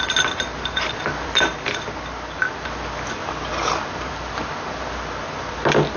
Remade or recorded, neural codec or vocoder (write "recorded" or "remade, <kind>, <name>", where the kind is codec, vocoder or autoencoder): recorded